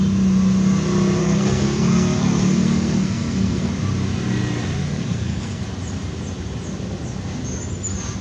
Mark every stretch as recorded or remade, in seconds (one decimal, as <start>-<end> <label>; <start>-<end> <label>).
0.0-1.2 recorded; 1.2-3.7 remade; 3.7-4.8 recorded; 4.8-5.6 remade; 5.6-8.2 recorded